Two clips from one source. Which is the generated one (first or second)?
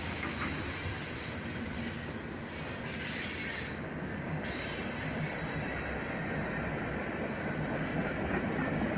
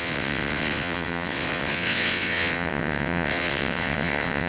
second